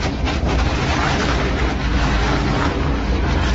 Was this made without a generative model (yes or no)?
yes